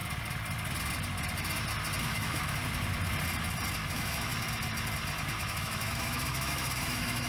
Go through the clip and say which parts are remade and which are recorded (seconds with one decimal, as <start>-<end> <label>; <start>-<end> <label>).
0.0-2.0 recorded; 2.0-2.6 remade; 2.6-3.9 recorded; 3.9-4.3 remade; 4.3-5.4 recorded; 5.4-7.3 remade